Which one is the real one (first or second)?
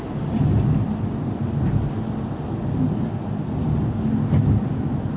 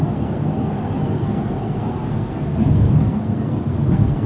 first